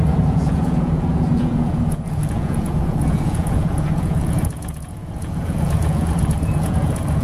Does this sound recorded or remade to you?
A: remade